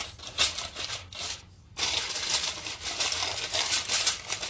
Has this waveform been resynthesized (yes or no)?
no